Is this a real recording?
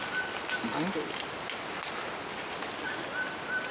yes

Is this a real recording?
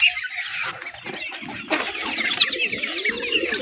yes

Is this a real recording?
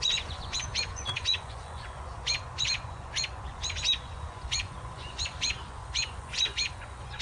no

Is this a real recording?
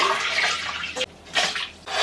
yes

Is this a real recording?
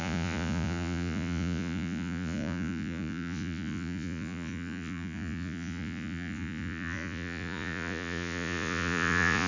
no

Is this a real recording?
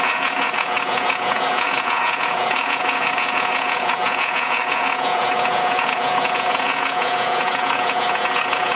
no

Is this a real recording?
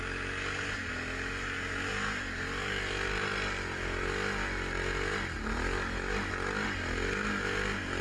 yes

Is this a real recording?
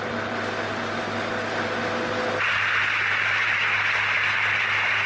yes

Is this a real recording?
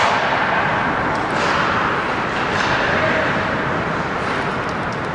yes